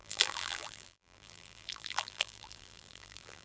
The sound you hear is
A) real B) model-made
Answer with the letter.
B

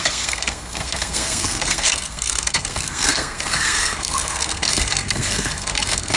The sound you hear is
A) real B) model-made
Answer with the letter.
B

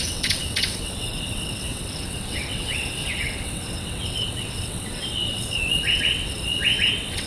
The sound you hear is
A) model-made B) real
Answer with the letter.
A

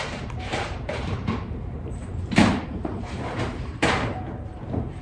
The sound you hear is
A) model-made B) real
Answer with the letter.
A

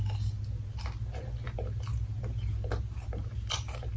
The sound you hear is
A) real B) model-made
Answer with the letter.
A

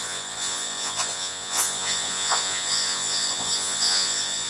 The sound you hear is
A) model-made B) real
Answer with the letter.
A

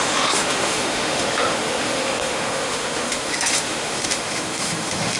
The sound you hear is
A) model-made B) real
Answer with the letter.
A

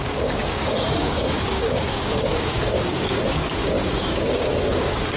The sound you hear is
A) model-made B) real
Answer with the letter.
A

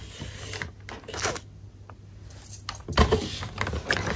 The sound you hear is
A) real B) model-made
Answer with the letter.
A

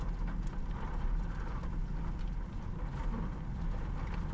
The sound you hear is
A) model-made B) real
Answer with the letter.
B